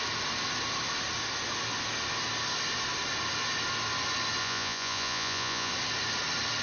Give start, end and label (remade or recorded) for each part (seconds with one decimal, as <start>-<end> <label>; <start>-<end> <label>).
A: 0.0-4.4 recorded; 4.4-5.7 remade; 5.7-6.6 recorded